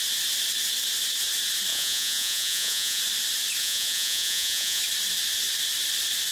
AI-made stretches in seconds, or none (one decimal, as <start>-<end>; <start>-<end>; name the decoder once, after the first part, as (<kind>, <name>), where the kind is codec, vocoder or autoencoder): 1.7-3.0 (vocoder, Vocos); 3.6-4.8